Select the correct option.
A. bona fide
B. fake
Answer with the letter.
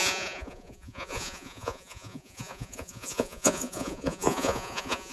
B